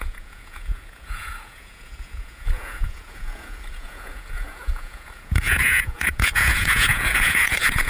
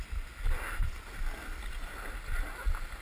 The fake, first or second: first